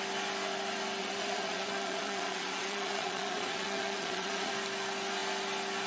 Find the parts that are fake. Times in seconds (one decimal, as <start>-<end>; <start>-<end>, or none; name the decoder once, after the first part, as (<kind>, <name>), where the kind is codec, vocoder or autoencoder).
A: 1.0-4.5 (vocoder, Vocos)